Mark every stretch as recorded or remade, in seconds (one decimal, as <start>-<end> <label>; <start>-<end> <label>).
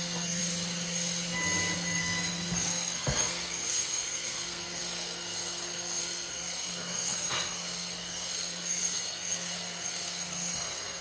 0.0-0.4 remade; 0.4-2.0 recorded; 2.0-11.0 remade